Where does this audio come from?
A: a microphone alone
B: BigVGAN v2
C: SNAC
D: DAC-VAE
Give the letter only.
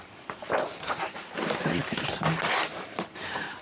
B